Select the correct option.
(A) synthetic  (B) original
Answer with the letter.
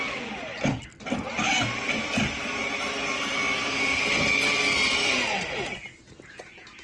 B